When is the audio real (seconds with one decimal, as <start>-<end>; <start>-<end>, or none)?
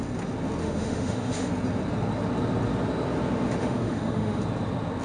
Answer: 0.0-0.6; 1.5-3.6; 4.4-5.0